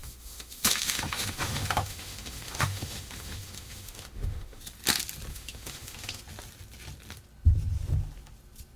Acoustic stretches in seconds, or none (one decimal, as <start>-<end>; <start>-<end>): 4.6-5.3; 6.2-8.8